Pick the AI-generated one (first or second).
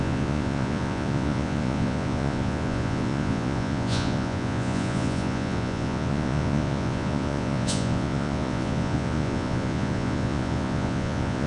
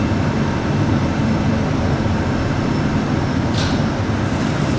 first